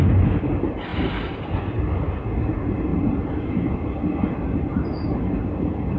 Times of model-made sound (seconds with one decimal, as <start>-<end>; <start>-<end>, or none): 2.9-3.7; 4.7-6.0

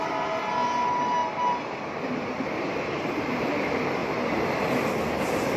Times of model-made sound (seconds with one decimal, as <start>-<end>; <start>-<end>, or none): none

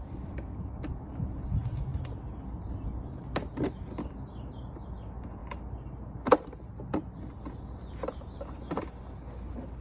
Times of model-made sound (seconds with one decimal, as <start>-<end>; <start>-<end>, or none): none

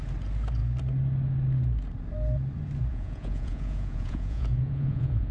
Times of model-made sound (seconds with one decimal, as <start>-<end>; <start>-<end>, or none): 2.9-5.3

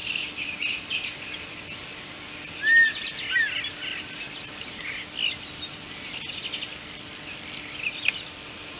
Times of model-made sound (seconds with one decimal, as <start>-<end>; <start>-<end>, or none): none

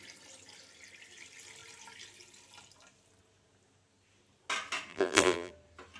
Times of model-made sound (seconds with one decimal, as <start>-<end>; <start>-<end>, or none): 4.9-5.5

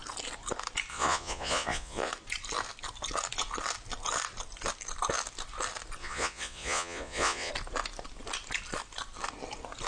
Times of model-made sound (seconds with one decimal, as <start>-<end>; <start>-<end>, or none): 0.9-2.1; 6.0-7.5